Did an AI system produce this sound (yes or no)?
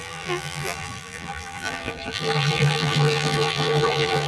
yes